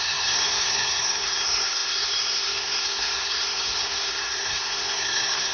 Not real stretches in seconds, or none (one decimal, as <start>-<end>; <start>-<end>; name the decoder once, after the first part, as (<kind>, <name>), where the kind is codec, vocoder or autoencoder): 0.0-5.5 (codec, SNAC)